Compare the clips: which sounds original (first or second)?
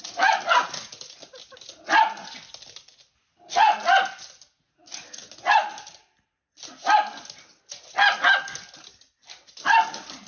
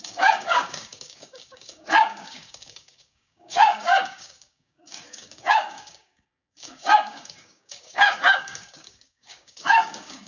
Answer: first